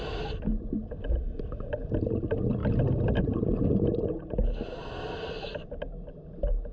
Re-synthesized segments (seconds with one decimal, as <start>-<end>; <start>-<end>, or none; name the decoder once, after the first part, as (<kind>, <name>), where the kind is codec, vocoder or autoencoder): none